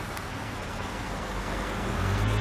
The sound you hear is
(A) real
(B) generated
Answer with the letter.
B